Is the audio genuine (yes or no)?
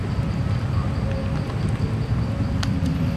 yes